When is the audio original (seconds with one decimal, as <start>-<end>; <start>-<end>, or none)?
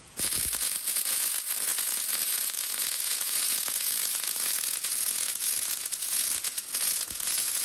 none